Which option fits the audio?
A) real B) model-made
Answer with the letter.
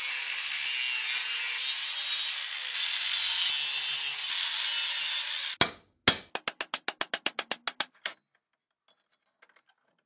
A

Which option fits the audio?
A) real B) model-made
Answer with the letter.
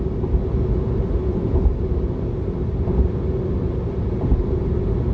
A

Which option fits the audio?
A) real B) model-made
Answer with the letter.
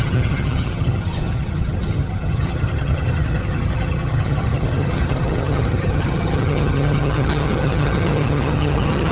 B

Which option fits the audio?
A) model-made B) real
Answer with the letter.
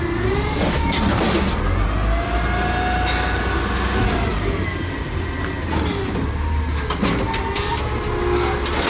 B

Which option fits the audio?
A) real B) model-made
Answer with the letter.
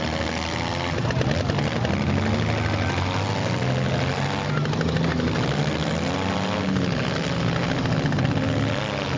A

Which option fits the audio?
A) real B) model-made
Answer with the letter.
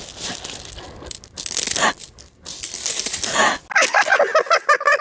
A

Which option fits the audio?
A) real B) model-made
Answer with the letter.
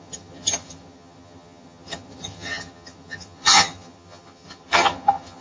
B